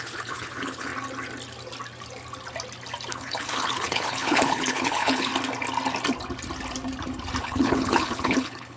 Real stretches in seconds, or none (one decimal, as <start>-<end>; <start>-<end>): 0.9-3.1; 5.3-7.4